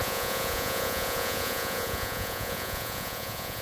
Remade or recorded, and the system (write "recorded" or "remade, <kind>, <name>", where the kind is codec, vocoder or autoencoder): remade, vocoder, Vocos